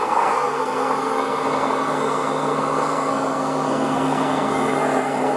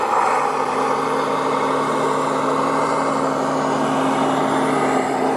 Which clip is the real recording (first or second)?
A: second